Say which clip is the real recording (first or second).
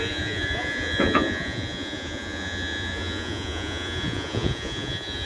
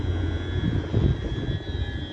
second